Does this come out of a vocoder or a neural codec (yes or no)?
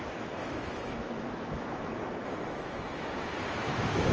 yes